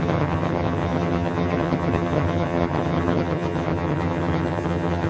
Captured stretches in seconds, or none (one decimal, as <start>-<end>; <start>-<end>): none